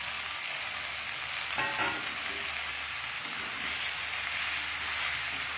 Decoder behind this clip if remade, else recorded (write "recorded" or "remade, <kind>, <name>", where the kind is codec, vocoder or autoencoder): recorded